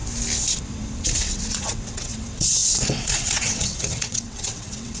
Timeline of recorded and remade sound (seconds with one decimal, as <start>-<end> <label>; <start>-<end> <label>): 0.0-0.6 recorded; 0.6-5.0 remade